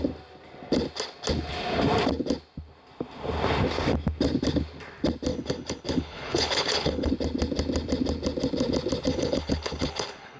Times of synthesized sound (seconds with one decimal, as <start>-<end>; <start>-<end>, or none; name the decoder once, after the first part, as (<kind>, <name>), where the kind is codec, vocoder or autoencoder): 5.3-7.1 (codec, HILCodec); 9.1-10.4